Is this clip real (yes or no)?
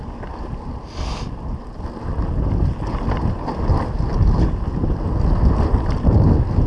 yes